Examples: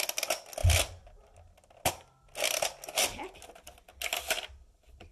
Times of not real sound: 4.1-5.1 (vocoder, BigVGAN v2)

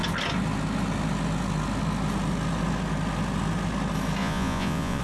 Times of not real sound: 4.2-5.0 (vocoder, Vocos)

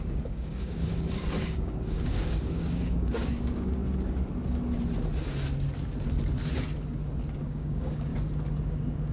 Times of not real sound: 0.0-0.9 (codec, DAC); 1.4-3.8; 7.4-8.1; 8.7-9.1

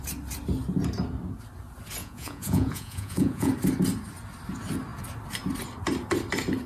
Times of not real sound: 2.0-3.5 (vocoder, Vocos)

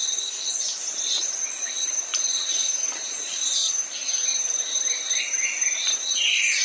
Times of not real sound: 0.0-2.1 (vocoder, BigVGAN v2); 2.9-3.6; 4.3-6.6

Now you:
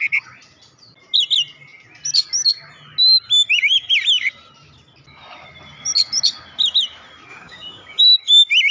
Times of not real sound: 7.3-8.0 (codec, DAC)

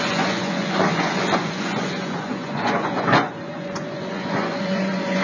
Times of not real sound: 0.0-5.2 (vocoder, Vocos)